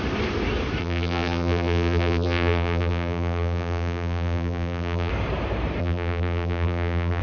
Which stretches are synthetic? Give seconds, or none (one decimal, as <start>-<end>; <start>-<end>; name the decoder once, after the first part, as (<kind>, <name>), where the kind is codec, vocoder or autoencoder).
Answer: 0.8-5.1 (vocoder, BigVGAN v2); 5.8-7.2